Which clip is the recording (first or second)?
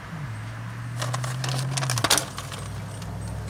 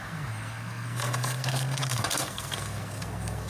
first